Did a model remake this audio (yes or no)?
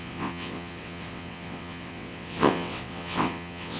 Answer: yes